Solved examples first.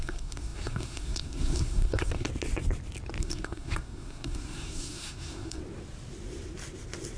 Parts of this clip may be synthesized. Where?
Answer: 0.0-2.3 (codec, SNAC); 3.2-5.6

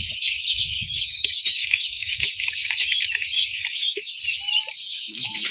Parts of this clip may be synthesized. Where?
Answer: 0.0-4.2 (autoencoder, DAC-VAE); 4.9-5.5

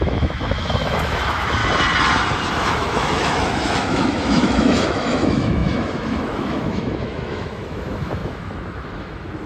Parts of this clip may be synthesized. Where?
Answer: 0.0-1.6 (autoencoder, DAC-VAE); 2.5-9.5

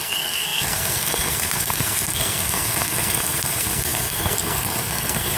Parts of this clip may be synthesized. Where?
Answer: 0.0-5.4 (codec, SNAC)

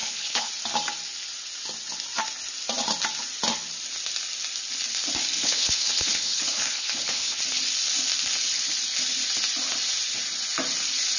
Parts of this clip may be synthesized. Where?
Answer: 0.0-0.5 (codec, HILCodec); 5.4-7.4

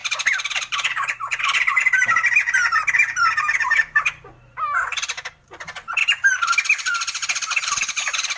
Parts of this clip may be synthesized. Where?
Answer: 0.6-1.7 (vocoder, BigVGAN v2); 3.3-6.0; 7.6-8.4